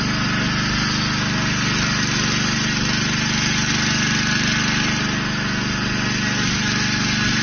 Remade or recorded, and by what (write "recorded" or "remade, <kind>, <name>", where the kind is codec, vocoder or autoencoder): recorded